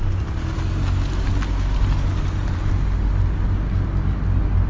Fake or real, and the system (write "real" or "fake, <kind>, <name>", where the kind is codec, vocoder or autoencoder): real